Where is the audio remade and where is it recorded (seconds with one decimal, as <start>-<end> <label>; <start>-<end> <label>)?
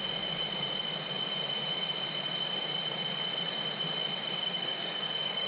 0.0-4.4 recorded; 4.4-5.5 remade